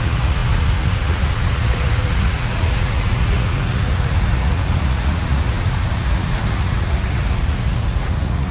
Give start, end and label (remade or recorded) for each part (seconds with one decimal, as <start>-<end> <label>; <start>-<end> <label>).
0.0-8.5 remade